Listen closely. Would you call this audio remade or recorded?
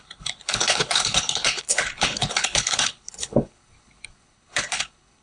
remade